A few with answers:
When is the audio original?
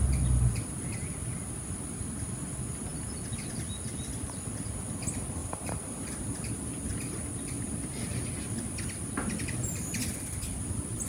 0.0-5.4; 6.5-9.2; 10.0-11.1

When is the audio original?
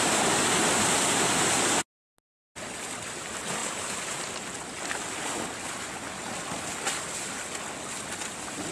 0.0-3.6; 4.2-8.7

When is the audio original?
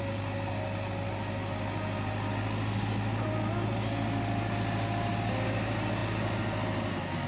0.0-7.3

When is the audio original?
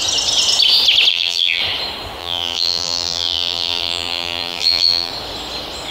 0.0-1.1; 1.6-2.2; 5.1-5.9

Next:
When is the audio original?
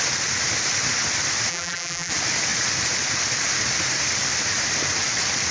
0.0-1.5; 2.1-5.5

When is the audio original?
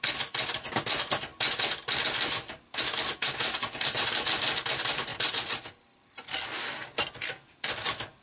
0.0-1.3; 2.6-5.1; 7.3-8.2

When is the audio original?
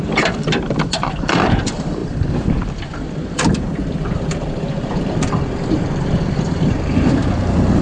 none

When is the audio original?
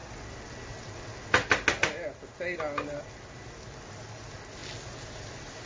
0.0-5.7